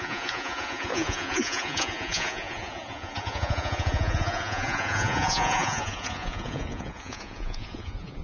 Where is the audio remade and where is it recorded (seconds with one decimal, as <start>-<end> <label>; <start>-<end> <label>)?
0.0-8.2 remade